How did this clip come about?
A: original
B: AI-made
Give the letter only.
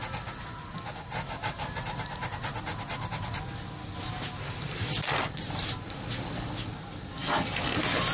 A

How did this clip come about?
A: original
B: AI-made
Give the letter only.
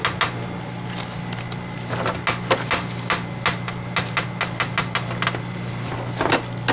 A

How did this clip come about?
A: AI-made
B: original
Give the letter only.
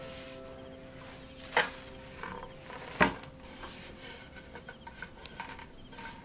B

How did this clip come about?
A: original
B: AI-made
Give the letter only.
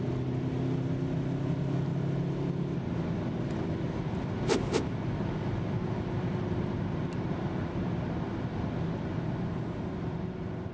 A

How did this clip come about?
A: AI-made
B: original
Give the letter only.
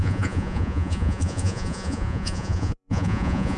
A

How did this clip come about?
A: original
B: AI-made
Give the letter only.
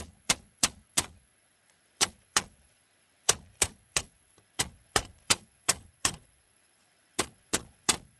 B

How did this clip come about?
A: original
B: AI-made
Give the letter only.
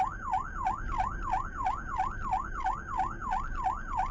A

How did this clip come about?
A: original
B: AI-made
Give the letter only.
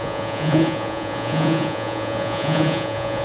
B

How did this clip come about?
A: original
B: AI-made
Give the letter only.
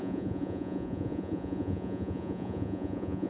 B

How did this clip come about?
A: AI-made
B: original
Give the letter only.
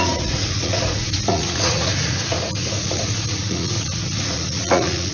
A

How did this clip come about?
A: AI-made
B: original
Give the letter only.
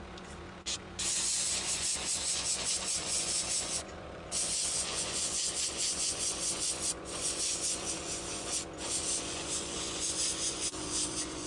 A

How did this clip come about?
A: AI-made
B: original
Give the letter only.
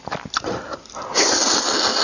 B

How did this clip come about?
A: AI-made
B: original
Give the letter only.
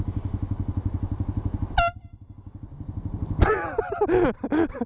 B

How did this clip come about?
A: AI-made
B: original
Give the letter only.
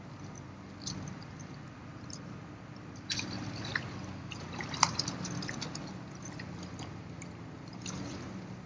B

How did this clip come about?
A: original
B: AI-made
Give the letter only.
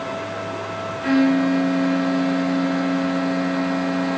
A